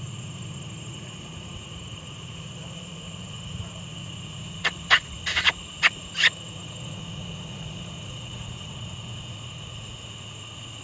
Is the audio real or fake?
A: fake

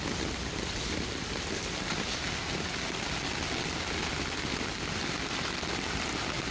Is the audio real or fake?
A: real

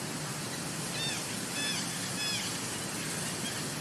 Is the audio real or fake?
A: real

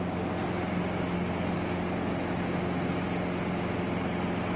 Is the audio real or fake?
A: real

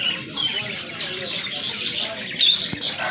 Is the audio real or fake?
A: real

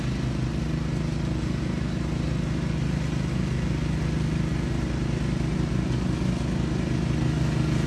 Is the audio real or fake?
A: real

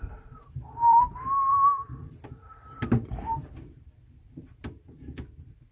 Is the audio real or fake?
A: fake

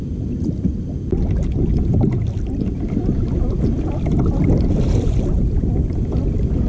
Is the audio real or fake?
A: real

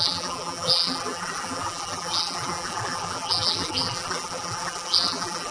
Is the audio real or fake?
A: fake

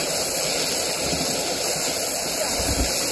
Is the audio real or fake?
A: real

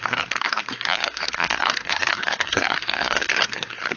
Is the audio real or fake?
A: fake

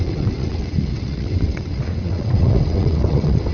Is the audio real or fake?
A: fake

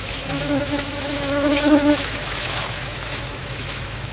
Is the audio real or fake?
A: fake